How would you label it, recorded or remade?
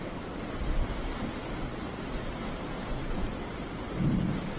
recorded